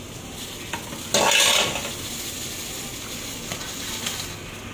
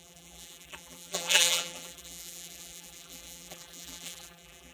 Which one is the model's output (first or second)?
second